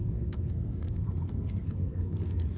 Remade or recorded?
remade